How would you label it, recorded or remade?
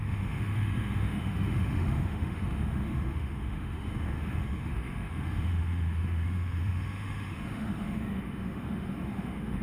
remade